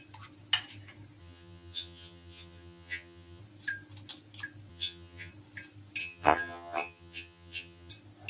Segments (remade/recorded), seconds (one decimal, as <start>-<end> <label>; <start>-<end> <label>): 0.0-1.2 recorded; 1.2-3.4 remade; 3.4-4.7 recorded; 4.7-5.3 remade; 5.3-6.0 recorded; 6.0-7.9 remade; 7.9-8.3 recorded